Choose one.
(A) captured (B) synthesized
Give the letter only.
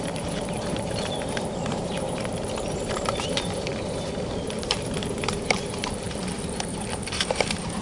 B